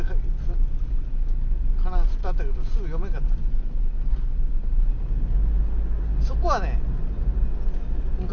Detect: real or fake real